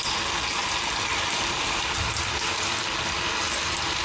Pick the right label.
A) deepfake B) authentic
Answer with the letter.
B